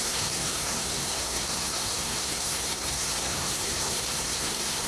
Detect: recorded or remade remade